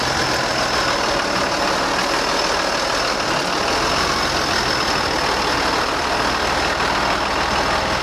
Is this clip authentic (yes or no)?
yes